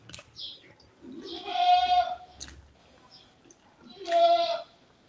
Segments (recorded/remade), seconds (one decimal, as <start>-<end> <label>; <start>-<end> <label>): 0.0-5.1 recorded